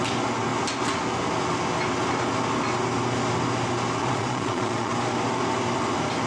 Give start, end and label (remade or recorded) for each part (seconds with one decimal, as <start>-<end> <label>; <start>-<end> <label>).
0.0-4.0 recorded; 4.0-4.9 remade; 4.9-6.3 recorded